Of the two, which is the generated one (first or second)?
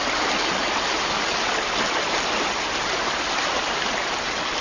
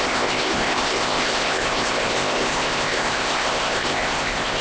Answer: second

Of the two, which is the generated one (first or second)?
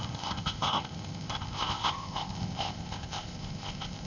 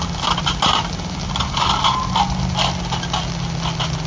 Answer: first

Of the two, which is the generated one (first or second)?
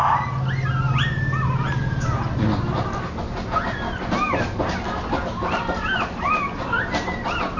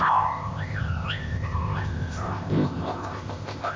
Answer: second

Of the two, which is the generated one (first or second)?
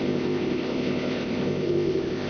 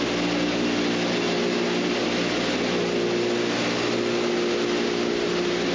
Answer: first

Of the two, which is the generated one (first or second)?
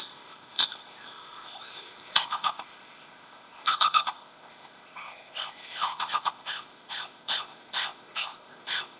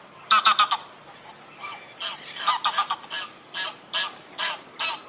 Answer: first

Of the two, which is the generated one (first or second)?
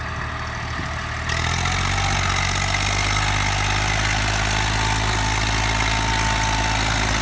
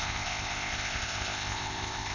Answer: second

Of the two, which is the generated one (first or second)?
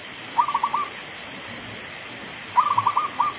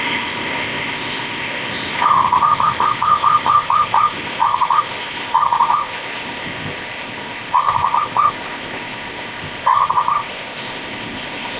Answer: second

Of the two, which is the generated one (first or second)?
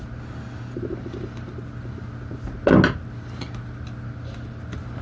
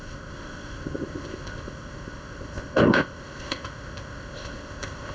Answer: second